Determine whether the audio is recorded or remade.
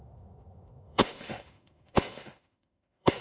remade